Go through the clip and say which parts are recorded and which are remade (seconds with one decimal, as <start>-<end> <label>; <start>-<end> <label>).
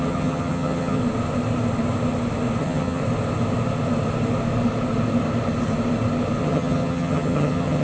0.0-1.0 remade; 1.0-2.6 recorded; 2.6-3.0 remade; 3.0-6.4 recorded; 6.4-7.8 remade